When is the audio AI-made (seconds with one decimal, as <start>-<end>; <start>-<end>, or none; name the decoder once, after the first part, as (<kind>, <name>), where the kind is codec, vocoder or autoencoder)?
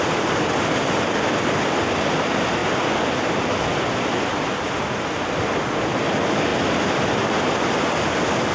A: none